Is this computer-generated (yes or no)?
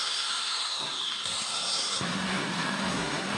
yes